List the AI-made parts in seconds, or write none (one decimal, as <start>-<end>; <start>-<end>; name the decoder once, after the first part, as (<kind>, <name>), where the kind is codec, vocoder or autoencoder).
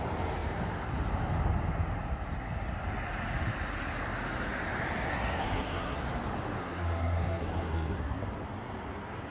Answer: 5.1-6.0 (codec, SNAC); 6.6-8.2